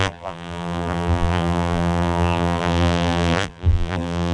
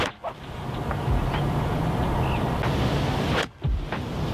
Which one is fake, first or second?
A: first